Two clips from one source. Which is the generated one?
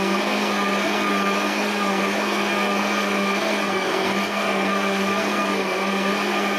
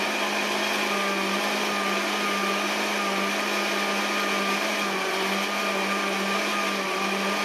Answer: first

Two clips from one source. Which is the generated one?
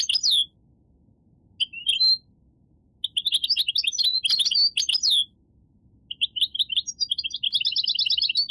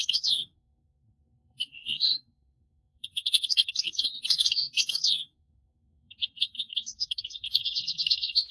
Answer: second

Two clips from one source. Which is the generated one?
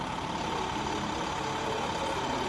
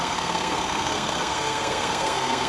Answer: second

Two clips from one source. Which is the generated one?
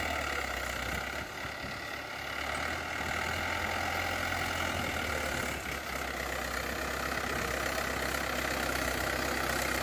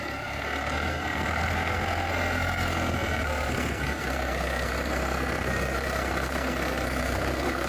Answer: second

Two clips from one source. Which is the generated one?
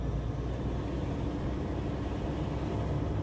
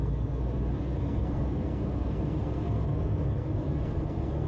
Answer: second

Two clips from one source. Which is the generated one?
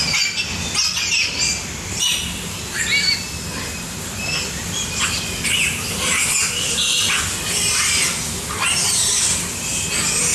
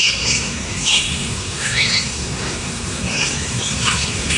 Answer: second